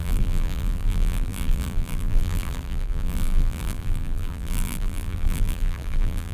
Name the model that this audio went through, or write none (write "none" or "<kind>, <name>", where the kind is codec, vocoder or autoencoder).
vocoder, BigVGAN v2